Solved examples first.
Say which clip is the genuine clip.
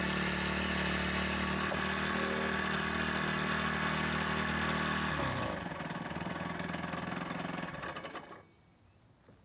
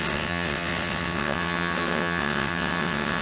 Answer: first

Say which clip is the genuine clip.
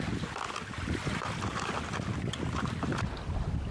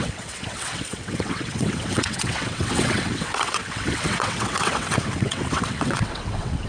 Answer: first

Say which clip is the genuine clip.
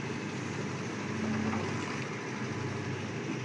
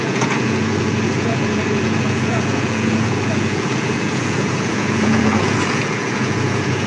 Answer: first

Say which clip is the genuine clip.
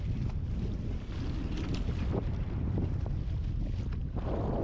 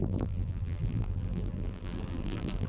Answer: first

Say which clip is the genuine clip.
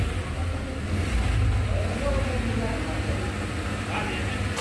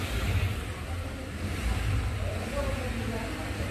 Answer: first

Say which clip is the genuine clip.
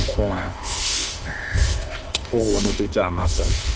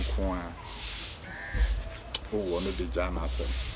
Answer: second